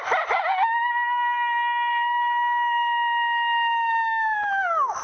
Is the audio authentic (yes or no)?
yes